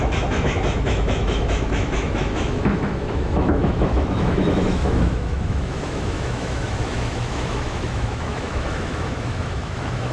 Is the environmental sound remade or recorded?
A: remade